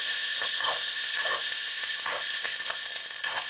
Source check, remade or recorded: remade